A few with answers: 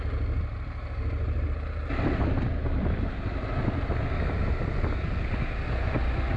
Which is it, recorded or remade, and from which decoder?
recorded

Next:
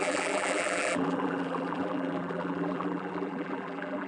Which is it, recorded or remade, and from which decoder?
remade, vocoder, BigVGAN v2